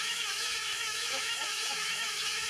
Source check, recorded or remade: remade